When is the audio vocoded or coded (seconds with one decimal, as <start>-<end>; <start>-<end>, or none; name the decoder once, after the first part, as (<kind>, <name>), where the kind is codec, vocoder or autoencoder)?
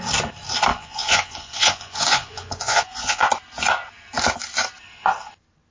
0.7-3.3 (vocoder, Vocos)